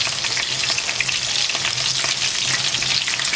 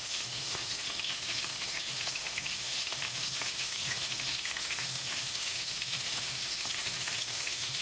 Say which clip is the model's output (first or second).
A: second